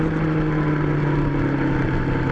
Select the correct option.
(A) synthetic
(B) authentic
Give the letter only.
B